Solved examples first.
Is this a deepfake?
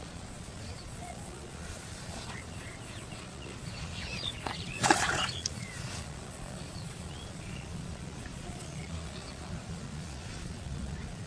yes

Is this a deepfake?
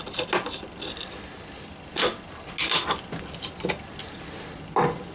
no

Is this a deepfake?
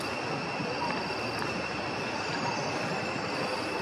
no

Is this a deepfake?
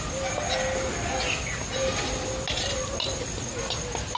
no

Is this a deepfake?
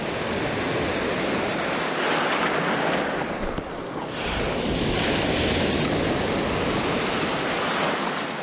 no